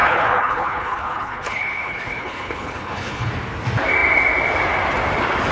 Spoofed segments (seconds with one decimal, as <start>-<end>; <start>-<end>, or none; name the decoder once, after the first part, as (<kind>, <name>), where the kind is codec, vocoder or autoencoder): 0.0-3.3 (codec, HILCodec)